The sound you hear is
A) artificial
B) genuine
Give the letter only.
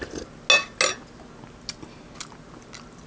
B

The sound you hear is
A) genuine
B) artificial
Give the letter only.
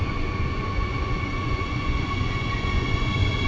B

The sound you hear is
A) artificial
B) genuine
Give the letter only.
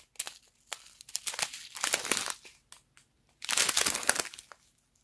B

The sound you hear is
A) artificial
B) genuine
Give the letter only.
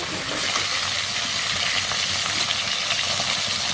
B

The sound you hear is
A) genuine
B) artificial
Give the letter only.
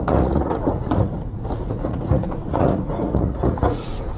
B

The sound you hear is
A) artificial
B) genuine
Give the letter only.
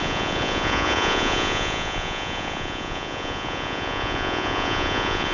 A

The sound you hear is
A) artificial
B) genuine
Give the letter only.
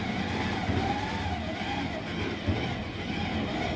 B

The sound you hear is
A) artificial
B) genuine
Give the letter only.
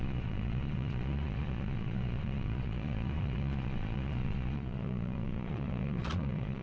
A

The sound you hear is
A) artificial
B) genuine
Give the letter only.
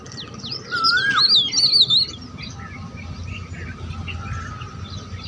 B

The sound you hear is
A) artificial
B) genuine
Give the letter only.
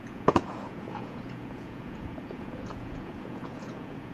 A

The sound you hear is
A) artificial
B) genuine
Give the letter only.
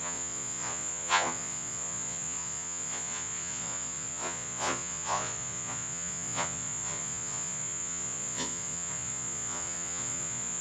A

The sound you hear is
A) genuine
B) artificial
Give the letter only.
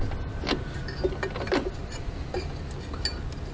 A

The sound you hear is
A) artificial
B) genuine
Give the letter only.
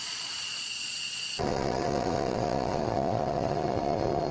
A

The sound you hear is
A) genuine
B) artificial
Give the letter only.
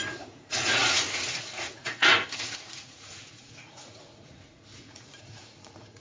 B